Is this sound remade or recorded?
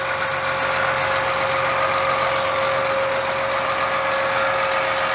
recorded